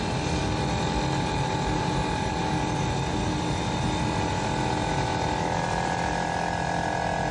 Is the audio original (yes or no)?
yes